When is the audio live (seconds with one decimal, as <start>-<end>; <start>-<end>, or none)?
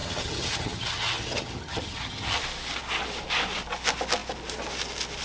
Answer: 2.4-5.2